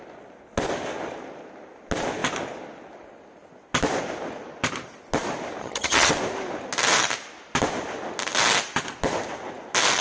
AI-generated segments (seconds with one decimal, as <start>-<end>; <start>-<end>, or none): 5.6-6.1